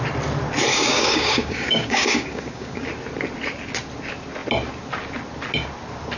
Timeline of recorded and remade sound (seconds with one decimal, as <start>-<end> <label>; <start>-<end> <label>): 0.0-0.7 recorded; 0.7-2.9 remade; 2.9-6.2 recorded